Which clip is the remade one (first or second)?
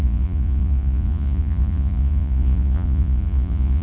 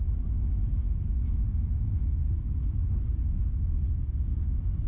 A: first